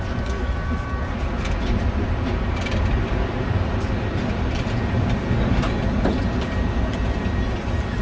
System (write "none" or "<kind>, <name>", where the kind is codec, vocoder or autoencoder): vocoder, BigVGAN v2